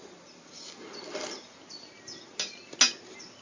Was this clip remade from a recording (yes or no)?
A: no